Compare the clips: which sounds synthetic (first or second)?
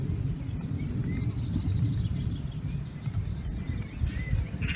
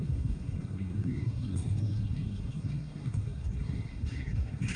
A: second